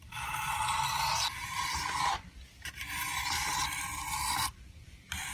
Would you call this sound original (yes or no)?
no